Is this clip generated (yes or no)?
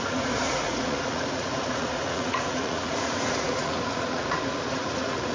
yes